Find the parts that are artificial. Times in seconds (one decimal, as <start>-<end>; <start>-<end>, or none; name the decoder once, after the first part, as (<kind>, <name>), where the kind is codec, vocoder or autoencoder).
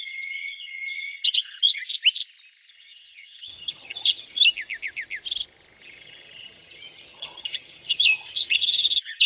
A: 0.0-1.8 (vocoder, HiFi-GAN); 2.7-4.4; 5.8-9.3